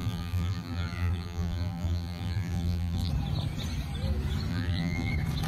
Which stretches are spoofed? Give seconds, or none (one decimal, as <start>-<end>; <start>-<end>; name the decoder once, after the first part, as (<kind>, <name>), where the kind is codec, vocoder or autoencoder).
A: 0.0-3.1 (vocoder, BigVGAN v2); 4.5-5.1